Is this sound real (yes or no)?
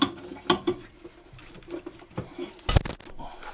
yes